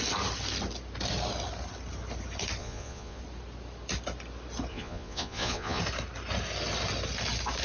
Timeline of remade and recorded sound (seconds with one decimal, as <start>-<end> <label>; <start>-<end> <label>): 0.0-2.6 recorded; 2.6-3.2 remade; 3.2-4.7 recorded; 4.7-5.8 remade; 5.8-7.6 recorded